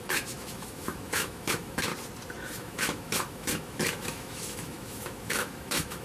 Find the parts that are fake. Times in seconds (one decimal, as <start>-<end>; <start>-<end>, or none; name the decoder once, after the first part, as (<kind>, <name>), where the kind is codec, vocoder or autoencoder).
0.0-1.9 (autoencoder, DAC-VAE); 2.5-6.0